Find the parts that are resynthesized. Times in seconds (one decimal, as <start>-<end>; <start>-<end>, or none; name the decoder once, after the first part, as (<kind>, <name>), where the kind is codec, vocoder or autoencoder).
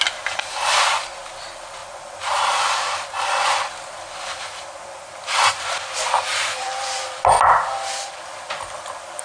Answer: 0.0-9.2 (vocoder, BigVGAN v2)